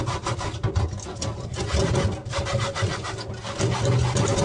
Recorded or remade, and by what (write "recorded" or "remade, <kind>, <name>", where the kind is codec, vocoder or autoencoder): recorded